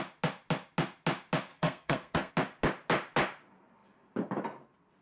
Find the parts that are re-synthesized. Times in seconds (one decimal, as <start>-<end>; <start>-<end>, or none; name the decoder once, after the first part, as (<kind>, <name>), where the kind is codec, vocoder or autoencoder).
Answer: 1.5-2.3 (codec, SNAC)